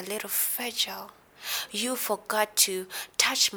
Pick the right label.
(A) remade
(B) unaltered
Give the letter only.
B